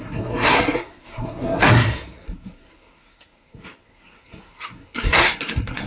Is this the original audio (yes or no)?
no